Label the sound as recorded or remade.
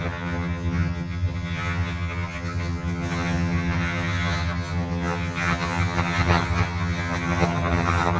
remade